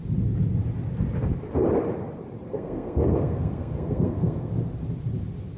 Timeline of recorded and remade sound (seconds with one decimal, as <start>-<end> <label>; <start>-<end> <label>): 0.0-2.5 recorded; 2.5-4.5 remade; 4.5-5.6 recorded